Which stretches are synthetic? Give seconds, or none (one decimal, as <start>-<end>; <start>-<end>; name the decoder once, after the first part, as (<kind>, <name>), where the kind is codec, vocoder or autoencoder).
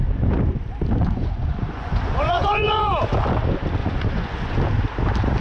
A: 1.0-2.9 (vocoder, Vocos); 3.8-4.6